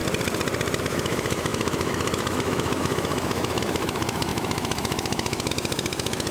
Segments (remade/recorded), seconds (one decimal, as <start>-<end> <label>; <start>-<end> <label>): 0.0-0.8 recorded; 0.8-6.3 remade